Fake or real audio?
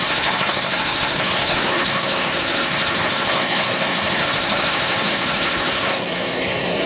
fake